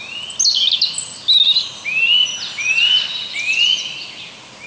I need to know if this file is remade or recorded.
recorded